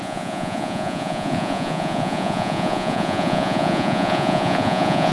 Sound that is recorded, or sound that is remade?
remade